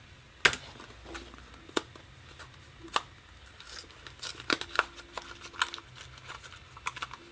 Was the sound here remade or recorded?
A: recorded